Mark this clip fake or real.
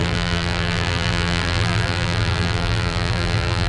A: fake